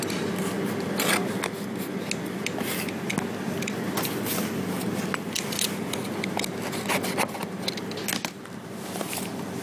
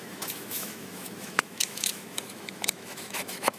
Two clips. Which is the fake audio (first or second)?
second